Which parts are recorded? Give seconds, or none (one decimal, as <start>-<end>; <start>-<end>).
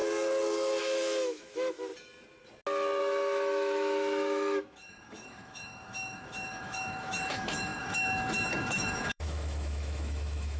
0.0-0.8; 1.9-3.0